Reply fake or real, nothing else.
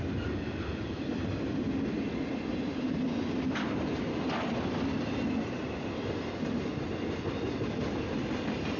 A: real